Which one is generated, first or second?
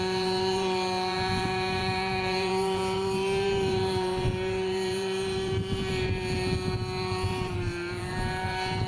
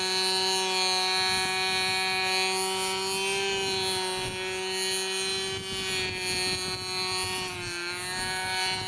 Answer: first